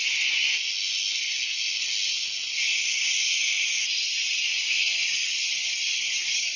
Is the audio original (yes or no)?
yes